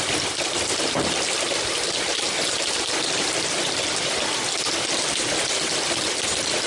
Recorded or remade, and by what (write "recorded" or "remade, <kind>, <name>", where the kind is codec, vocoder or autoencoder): recorded